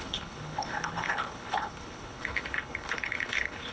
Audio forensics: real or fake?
fake